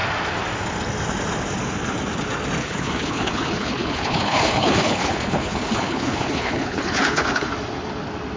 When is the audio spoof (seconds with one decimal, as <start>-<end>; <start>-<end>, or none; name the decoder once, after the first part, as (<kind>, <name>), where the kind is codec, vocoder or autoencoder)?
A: 2.6-7.5 (codec, HILCodec)